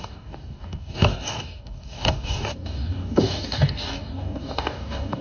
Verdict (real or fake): fake